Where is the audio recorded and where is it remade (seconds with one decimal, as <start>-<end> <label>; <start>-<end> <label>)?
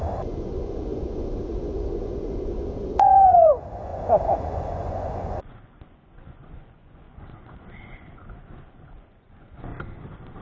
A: 0.0-9.7 remade; 9.7-10.4 recorded